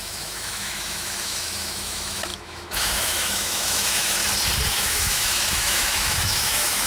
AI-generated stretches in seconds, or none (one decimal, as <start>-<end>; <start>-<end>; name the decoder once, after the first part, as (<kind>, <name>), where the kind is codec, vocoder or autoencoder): 0.0-4.2 (autoencoder, DAC-VAE); 4.7-6.9